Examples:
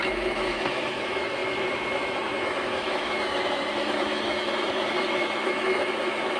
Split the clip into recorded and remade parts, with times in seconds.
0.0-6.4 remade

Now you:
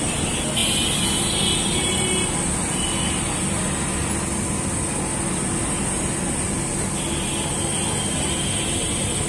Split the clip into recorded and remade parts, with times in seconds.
0.0-9.3 recorded

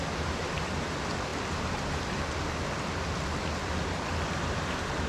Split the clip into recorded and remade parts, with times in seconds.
0.0-5.1 recorded